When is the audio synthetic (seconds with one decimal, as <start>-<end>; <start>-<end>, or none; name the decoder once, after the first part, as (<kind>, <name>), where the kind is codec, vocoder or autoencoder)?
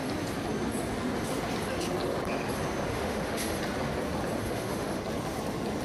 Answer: 2.9-3.6 (autoencoder, DAC-VAE); 4.4-5.0